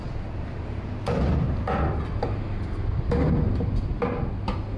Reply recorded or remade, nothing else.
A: recorded